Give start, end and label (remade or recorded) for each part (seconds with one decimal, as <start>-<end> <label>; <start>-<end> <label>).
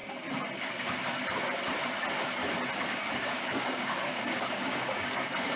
0.0-2.9 recorded; 2.9-5.6 remade